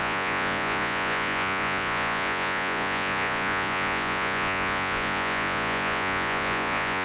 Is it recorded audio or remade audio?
remade